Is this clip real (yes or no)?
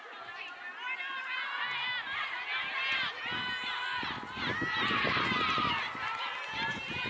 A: yes